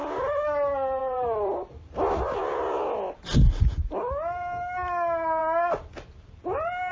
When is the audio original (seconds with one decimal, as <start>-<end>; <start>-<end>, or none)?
0.0-1.0; 2.4-6.9